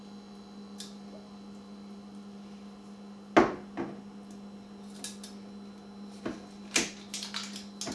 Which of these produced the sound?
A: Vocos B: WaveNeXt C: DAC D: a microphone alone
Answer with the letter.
D